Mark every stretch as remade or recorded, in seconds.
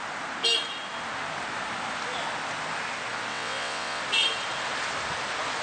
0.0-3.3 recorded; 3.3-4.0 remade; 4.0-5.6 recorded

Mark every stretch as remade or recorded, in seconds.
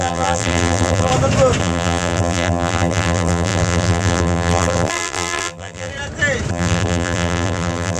0.0-1.1 remade; 1.1-1.6 recorded; 1.6-5.9 remade; 5.9-6.5 recorded; 6.5-8.0 remade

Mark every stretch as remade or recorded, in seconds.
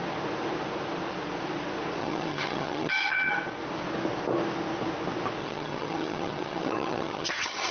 0.0-2.0 recorded; 2.0-3.3 remade; 3.3-5.4 recorded; 5.4-7.7 remade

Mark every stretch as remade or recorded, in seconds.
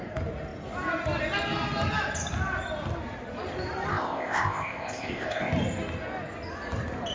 0.0-3.9 recorded; 3.9-5.5 remade; 5.5-7.1 recorded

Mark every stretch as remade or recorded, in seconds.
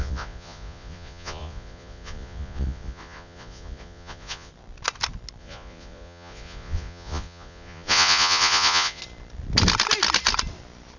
0.0-4.5 remade; 4.5-5.4 recorded; 5.4-9.0 remade; 9.0-11.0 recorded